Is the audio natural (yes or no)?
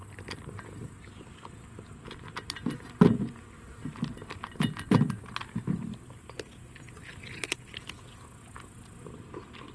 yes